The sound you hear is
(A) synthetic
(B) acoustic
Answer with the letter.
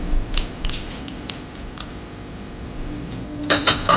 A